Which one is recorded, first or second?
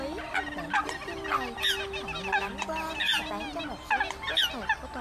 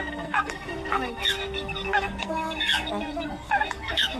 first